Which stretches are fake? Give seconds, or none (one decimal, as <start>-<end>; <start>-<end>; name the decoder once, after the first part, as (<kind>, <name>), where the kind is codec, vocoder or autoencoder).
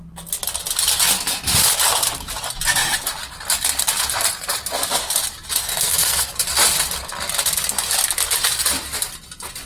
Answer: 5.6-6.3 (codec, SNAC)